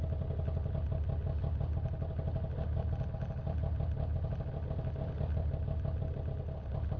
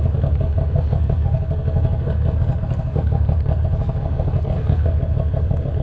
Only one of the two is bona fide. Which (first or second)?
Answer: first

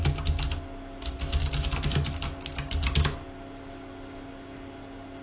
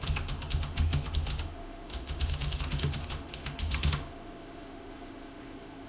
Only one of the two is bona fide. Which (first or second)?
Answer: first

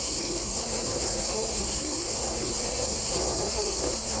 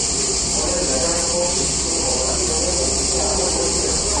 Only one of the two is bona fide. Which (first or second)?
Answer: second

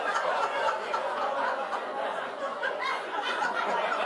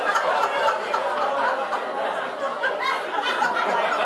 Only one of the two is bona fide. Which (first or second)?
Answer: second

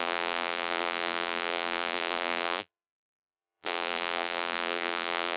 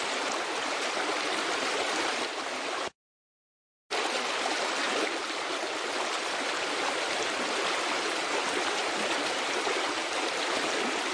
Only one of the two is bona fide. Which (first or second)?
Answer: second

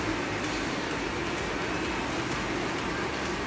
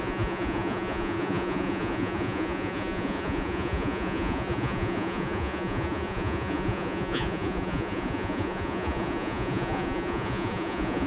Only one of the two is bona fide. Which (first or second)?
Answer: first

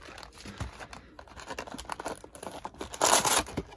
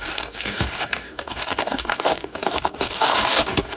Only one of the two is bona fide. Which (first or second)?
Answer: first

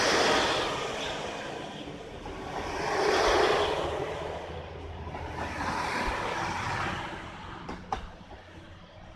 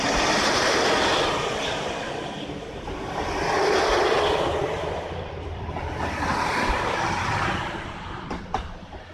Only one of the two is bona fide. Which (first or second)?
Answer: first